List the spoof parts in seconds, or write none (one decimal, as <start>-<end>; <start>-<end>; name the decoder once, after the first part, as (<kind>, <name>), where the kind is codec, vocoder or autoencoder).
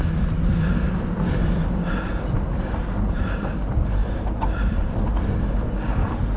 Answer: 4.0-5.0 (vocoder, BigVGAN v2)